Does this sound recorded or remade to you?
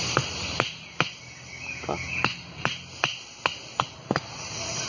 recorded